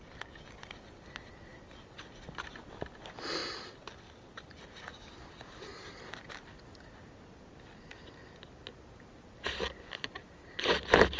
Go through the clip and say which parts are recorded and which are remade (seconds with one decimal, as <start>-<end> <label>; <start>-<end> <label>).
0.0-11.2 recorded